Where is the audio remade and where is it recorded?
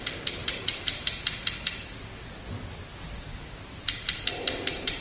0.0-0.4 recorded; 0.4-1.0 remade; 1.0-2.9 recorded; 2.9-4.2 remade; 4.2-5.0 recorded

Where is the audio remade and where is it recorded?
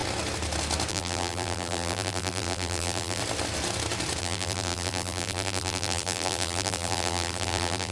0.0-0.9 recorded; 0.9-3.2 remade; 3.2-4.2 recorded; 4.2-7.9 remade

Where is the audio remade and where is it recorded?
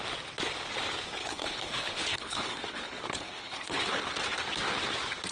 0.0-1.2 recorded; 1.2-4.0 remade; 4.0-5.3 recorded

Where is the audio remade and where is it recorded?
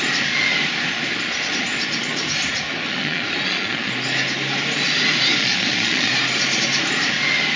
0.0-2.9 recorded; 2.9-3.9 remade; 3.9-5.4 recorded; 5.4-6.1 remade; 6.1-7.6 recorded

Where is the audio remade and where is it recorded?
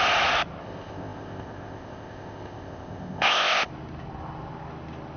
0.0-0.6 recorded; 0.6-3.7 remade; 3.7-5.2 recorded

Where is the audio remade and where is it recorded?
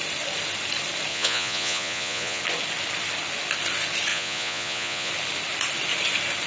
0.0-1.1 recorded; 1.1-2.4 remade; 2.4-4.1 recorded; 4.1-5.1 remade; 5.1-6.5 recorded